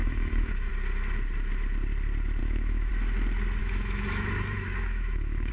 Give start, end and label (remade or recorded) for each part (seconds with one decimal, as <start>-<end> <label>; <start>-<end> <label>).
0.0-0.7 remade; 0.7-2.4 recorded; 2.4-2.9 remade; 2.9-3.6 recorded; 3.6-5.5 remade